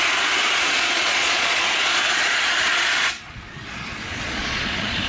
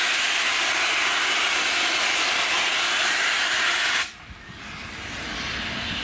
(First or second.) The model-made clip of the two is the first